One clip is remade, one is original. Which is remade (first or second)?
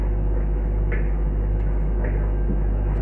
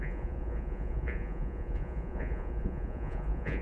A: second